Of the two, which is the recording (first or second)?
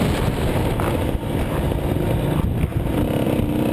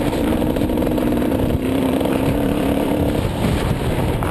first